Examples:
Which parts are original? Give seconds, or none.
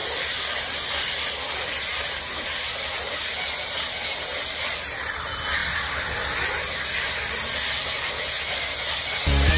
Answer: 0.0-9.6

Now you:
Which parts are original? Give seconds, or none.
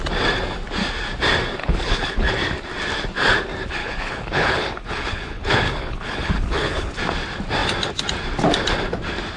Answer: 0.0-1.6; 2.3-3.8; 6.9-9.4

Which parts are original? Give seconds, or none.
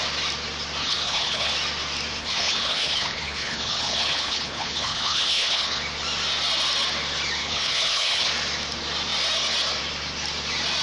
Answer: 0.0-0.8; 1.5-2.2; 5.8-7.4; 8.3-10.8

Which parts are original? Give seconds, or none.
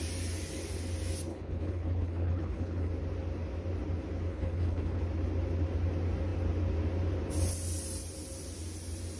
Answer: 0.0-1.3; 2.9-4.3; 5.0-9.2